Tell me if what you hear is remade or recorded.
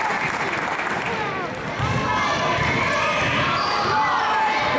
recorded